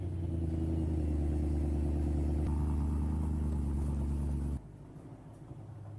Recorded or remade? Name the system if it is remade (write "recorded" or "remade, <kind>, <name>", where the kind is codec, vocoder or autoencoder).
recorded